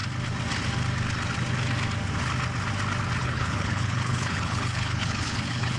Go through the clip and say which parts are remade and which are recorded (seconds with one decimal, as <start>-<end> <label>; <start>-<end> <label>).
0.0-3.2 recorded; 3.2-5.8 remade